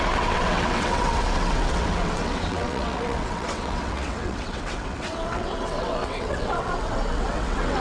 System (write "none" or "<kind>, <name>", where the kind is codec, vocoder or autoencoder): vocoder, WaveNeXt